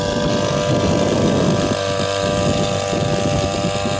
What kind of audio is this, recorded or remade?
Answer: recorded